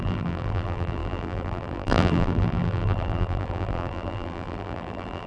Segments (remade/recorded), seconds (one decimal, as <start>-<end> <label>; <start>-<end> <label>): 0.0-5.3 remade